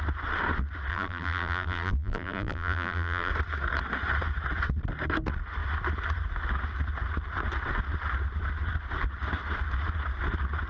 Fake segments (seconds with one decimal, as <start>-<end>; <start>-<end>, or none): 0.9-3.3